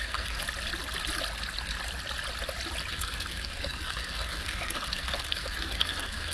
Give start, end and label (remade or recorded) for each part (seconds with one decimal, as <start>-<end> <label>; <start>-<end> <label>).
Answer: 0.0-0.4 remade; 0.4-2.9 recorded; 2.9-6.3 remade